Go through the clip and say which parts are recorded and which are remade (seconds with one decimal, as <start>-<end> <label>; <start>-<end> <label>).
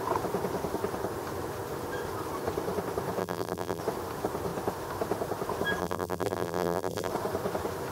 0.0-3.2 recorded; 3.2-3.8 remade; 3.8-5.8 recorded; 5.8-7.1 remade; 7.1-7.9 recorded